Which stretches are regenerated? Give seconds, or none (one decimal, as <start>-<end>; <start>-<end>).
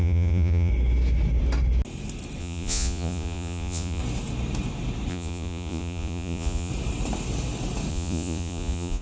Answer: 0.0-0.7; 2.4-4.0; 5.1-6.7; 7.9-9.0